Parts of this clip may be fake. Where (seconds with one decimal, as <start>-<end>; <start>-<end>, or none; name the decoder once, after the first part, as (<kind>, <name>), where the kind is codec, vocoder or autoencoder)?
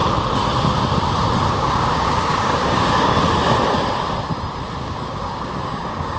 1.5-3.2 (codec, DAC); 4.8-6.2